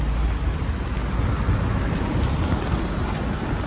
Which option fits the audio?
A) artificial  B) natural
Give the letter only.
B